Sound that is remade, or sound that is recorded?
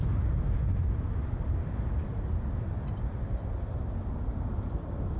recorded